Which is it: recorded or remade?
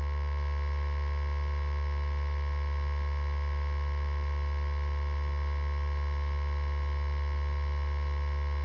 recorded